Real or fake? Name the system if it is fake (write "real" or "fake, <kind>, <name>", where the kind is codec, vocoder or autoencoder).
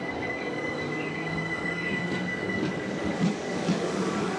fake, codec, DAC